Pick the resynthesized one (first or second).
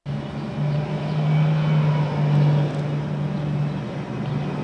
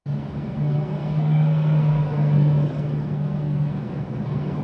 second